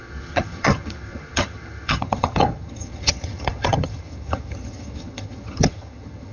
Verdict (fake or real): fake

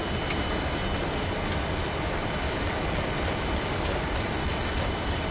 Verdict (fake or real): real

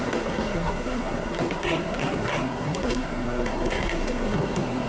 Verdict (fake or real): fake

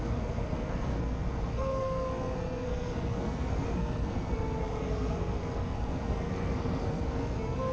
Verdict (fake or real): fake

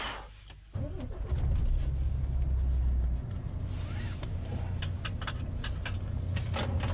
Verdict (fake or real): real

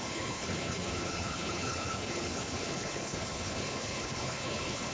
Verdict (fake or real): fake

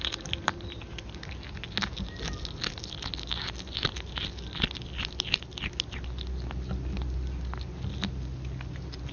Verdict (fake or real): real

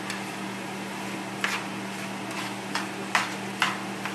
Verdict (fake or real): real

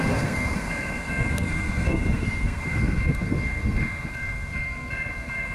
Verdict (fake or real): fake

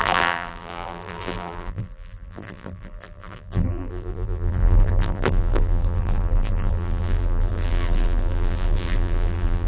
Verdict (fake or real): fake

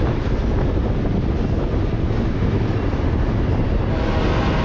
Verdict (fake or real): real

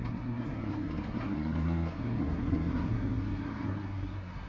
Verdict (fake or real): fake